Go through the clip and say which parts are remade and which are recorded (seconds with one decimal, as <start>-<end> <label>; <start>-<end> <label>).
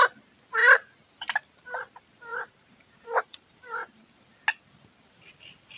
0.0-2.3 recorded; 2.3-3.6 remade; 3.6-5.8 recorded